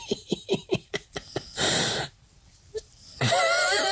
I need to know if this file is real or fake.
fake